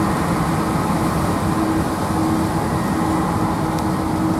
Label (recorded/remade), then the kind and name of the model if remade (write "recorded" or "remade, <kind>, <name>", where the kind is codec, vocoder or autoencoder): recorded